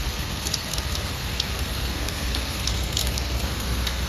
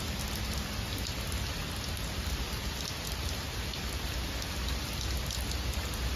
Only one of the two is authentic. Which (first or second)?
second